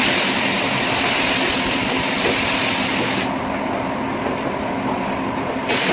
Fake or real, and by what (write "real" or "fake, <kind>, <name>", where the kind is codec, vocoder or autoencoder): real